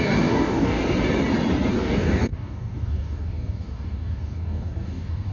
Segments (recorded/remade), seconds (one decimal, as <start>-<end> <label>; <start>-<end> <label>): 0.0-0.8 remade; 0.8-1.7 recorded; 1.7-5.3 remade